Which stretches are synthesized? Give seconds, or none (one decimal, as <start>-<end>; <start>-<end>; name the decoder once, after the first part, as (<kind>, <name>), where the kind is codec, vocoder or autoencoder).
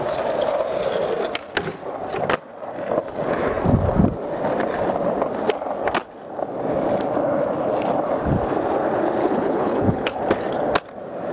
9.2-10.2 (codec, HILCodec)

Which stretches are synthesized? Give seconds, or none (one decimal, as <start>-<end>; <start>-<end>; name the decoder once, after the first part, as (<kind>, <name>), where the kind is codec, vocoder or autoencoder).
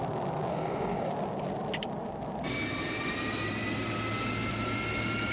0.5-1.1 (codec, DAC)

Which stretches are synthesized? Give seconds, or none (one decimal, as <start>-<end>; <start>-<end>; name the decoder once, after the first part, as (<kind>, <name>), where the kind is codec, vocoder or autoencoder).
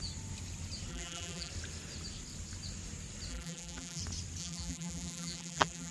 0.9-1.5 (vocoder, BigVGAN v2); 3.3-4.0; 4.4-5.9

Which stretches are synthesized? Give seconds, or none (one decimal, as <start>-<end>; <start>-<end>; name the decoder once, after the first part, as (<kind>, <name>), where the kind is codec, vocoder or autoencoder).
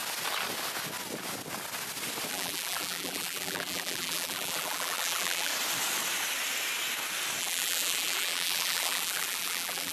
2.3-5.5 (vocoder, BigVGAN v2); 7.4-9.9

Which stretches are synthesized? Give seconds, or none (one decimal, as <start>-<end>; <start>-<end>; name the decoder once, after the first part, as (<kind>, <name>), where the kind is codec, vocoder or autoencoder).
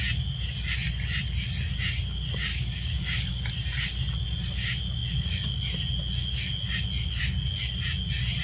2.5-3.4 (codec, DAC)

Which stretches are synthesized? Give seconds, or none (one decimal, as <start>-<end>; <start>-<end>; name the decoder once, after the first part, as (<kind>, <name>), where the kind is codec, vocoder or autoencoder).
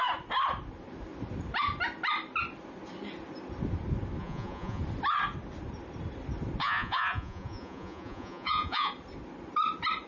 4.2-4.8 (vocoder, Vocos); 6.6-8.9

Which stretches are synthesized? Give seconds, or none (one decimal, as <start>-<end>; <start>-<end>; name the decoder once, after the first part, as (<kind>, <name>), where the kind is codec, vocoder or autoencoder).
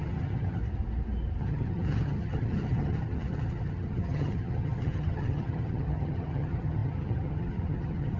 0.0-0.6 (vocoder, HiFi-GAN); 1.4-8.2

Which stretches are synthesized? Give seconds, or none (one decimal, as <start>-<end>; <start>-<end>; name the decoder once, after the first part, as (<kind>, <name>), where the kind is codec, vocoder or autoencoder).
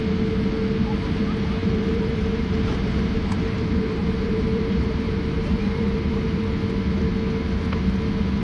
1.6-6.4 (vocoder, BigVGAN v2)